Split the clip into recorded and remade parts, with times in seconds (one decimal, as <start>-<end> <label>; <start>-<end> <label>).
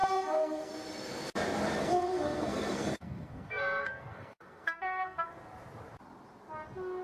0.0-0.7 remade; 0.7-1.8 recorded; 1.8-5.3 remade; 5.3-7.0 recorded